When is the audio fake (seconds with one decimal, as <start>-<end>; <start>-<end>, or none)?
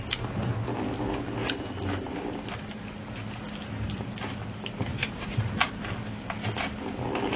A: 4.9-5.6